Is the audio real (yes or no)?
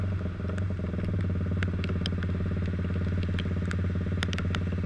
yes